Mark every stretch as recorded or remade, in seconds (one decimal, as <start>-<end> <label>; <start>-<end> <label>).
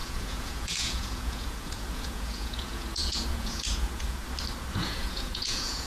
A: 0.0-4.2 remade; 4.2-4.7 recorded; 4.7-5.9 remade